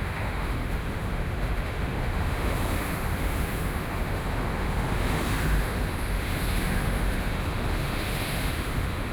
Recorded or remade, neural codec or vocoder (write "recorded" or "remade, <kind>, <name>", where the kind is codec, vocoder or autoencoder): remade, autoencoder, DAC-VAE